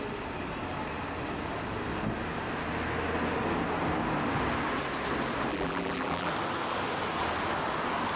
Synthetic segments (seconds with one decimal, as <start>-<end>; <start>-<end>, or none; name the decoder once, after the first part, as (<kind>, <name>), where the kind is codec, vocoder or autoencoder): 5.5-6.3 (vocoder, BigVGAN v2)